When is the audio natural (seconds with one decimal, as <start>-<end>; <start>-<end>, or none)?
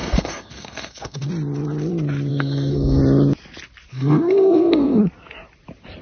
1.3-2.3; 3.0-3.9; 5.0-6.0